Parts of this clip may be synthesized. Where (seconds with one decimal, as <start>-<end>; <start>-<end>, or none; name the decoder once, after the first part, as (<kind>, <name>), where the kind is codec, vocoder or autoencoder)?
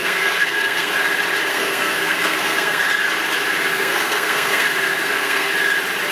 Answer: 0.0-0.9 (codec, SNAC); 1.5-2.8; 3.7-5.5